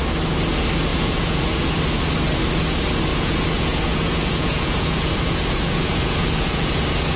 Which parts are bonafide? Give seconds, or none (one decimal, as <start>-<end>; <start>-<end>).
0.0-0.9; 1.7-3.1; 6.8-7.2